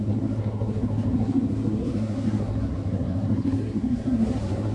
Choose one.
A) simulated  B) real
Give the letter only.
A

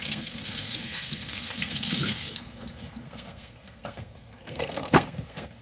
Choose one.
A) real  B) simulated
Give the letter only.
B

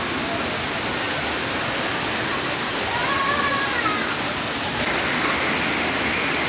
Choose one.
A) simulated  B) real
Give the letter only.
B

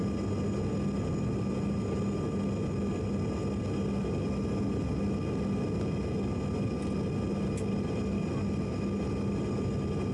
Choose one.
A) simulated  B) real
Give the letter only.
B